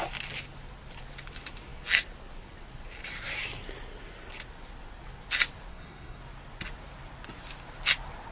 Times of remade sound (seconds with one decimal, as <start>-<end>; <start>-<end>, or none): 5.7-6.2